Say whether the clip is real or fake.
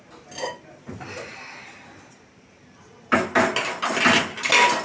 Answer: real